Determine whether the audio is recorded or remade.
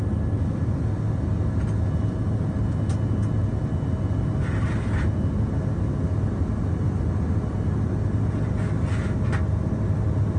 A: recorded